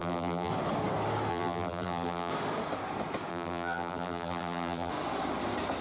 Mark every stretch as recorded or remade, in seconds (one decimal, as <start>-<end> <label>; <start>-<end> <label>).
0.0-0.5 remade; 0.5-1.3 recorded; 1.3-2.3 remade; 2.3-3.3 recorded; 3.3-4.9 remade; 4.9-5.8 recorded

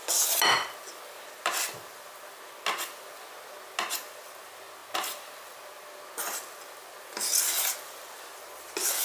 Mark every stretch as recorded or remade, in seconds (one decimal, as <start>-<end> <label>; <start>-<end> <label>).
0.0-9.0 recorded

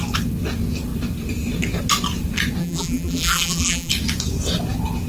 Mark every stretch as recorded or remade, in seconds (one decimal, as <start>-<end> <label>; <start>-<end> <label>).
0.0-2.6 recorded; 2.6-3.9 remade; 3.9-5.1 recorded

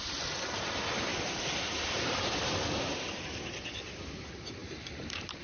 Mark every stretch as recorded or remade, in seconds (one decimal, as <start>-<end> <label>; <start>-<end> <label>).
0.0-1.1 recorded; 1.1-3.5 remade; 3.5-4.6 recorded; 4.6-5.4 remade

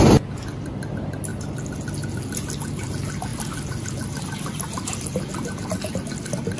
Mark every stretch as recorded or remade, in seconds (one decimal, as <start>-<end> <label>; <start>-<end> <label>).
0.0-6.6 recorded